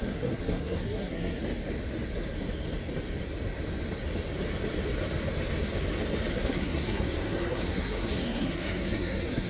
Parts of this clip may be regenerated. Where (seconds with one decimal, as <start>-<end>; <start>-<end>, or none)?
0.0-1.4; 6.3-9.5